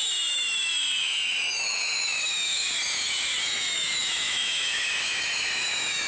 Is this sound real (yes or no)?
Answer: no